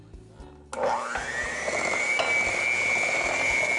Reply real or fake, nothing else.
real